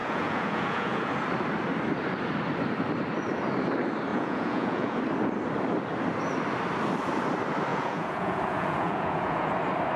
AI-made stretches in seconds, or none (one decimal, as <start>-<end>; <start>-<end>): 0.0-1.1; 4.1-5.0; 7.7-9.5